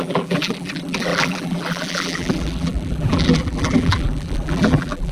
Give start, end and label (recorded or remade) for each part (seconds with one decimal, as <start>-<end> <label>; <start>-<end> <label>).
0.0-5.1 remade